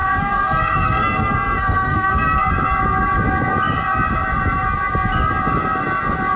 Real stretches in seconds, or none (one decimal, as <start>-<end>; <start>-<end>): 2.5-6.4

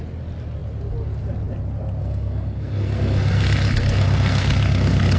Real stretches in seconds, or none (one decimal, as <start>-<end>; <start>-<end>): 0.0-2.0

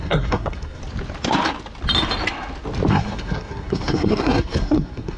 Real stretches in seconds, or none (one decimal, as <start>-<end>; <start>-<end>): 0.8-2.9

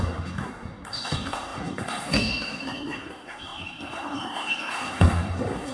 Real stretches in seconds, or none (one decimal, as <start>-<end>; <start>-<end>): none

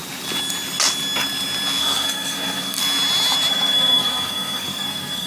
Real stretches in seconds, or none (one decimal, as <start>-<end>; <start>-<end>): 0.0-1.8; 2.8-3.5

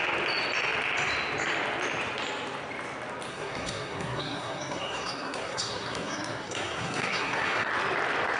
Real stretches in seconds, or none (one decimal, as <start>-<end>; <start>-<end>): 0.0-3.3; 7.7-8.4

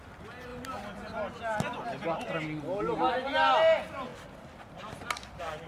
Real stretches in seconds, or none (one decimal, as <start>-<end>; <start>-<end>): 0.0-5.7